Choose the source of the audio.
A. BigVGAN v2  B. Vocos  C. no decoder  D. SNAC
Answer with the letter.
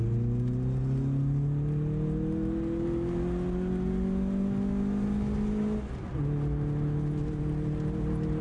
C